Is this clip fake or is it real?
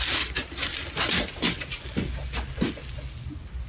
real